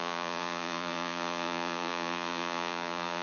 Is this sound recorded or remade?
remade